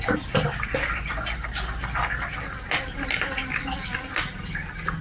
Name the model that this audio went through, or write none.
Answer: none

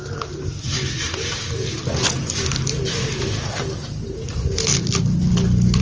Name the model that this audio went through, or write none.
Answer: none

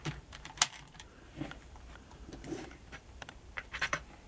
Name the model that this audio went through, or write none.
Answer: vocoder, BigVGAN v2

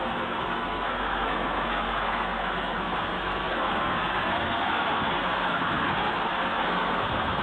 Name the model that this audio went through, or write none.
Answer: codec, SNAC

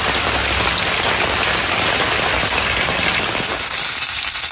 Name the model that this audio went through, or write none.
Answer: none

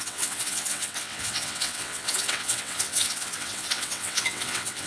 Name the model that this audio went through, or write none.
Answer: vocoder, WaveNeXt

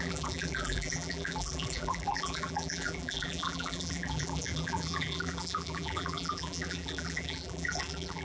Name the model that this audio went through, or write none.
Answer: vocoder, BigVGAN v2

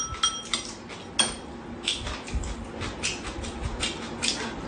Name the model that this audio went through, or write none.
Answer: none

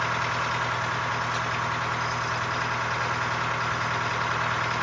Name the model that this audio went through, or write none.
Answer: none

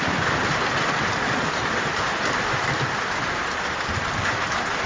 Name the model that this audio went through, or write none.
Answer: none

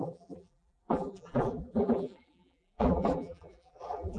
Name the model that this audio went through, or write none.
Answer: vocoder, BigVGAN v2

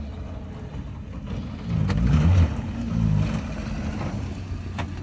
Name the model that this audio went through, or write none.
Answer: none